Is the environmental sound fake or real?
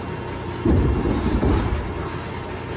real